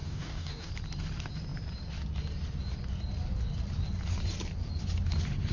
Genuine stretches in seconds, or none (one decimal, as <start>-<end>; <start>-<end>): 0.7-5.5